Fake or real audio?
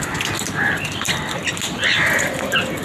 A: real